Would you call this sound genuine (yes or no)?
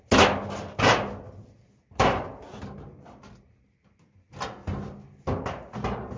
yes